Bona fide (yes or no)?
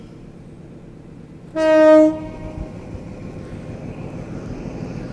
yes